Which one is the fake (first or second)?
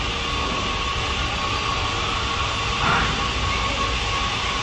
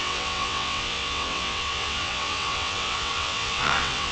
second